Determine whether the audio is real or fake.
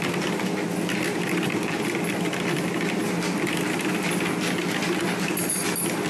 real